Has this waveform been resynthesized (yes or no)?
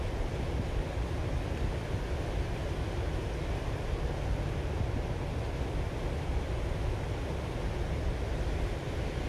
no